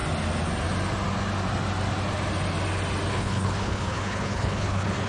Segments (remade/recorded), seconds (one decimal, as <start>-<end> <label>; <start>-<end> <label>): 0.0-3.1 recorded; 3.1-5.1 remade

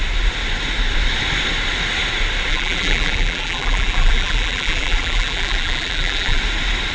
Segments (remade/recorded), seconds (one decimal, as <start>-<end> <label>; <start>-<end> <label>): 0.0-2.5 recorded; 2.5-6.4 remade; 6.4-6.9 recorded

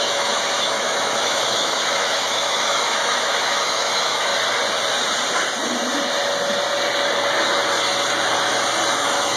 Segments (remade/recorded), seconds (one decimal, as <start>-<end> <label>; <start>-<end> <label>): 0.0-4.3 remade; 4.3-9.0 recorded; 9.0-9.4 remade

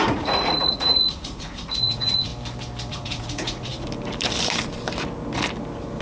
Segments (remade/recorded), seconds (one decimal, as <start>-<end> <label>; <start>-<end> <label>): 0.0-2.3 remade; 2.3-2.9 recorded; 2.9-3.7 remade; 3.7-6.0 recorded

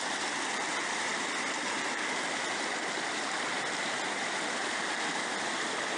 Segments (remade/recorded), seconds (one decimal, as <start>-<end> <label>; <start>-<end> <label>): 0.0-1.1 remade; 1.1-4.7 recorded; 4.7-6.0 remade